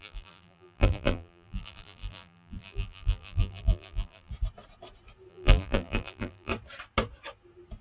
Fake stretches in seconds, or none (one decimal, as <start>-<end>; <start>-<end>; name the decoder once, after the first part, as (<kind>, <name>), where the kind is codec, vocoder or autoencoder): 0.0-4.3 (vocoder, BigVGAN v2); 5.3-6.5